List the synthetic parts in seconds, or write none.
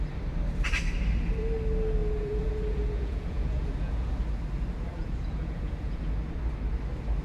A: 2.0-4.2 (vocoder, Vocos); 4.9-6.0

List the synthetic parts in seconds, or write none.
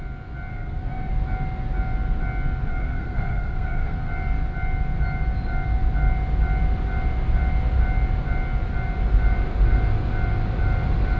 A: 0.5-1.1 (codec, SNAC); 2.7-4.0